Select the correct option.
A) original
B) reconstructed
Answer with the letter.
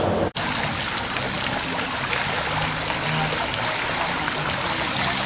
A